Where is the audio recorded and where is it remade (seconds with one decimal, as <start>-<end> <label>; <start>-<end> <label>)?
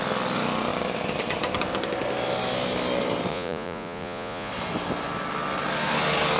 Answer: 0.0-3.3 recorded; 3.3-4.5 remade; 4.5-6.4 recorded